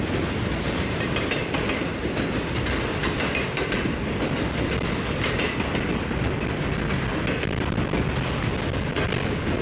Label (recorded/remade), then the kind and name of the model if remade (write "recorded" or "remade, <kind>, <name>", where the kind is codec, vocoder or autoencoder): recorded